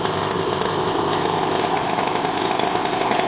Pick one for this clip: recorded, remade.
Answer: remade